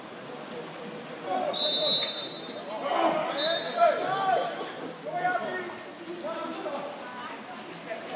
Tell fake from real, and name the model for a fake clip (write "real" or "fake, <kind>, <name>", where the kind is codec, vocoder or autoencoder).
real